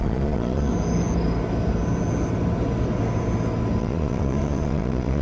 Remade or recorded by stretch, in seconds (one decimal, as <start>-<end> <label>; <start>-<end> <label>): 0.0-0.7 remade; 0.7-3.8 recorded; 3.8-5.2 remade